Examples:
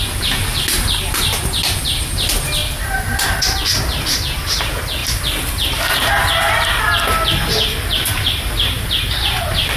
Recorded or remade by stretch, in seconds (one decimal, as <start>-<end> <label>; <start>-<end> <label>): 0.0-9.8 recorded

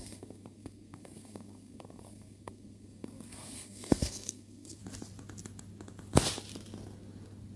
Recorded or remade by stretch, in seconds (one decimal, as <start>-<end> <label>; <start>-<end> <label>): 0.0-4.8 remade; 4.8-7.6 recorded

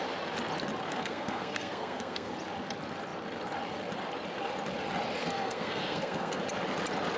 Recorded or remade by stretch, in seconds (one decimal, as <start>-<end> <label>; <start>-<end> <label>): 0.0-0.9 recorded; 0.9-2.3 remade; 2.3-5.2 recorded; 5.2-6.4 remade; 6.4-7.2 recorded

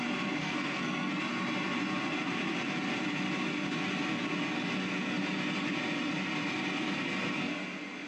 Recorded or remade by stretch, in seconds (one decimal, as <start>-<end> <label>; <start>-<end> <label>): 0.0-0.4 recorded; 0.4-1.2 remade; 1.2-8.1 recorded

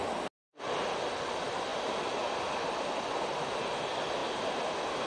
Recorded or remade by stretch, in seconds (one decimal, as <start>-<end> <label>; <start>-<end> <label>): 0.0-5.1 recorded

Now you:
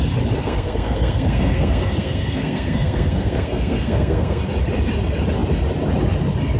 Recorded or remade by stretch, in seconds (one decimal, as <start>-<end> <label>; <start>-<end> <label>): 0.0-0.4 recorded; 0.4-4.4 remade; 4.4-6.6 recorded

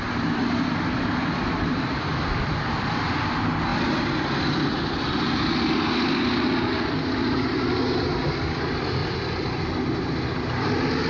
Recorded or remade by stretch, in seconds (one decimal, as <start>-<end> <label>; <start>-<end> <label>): 0.0-11.1 recorded